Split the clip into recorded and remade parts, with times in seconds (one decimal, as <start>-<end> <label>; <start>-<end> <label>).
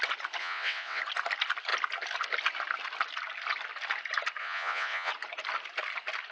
0.0-0.4 recorded; 0.4-1.0 remade; 1.0-4.4 recorded; 4.4-5.1 remade; 5.1-6.3 recorded